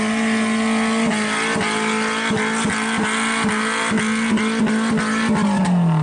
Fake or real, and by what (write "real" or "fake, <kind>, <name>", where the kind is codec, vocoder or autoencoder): real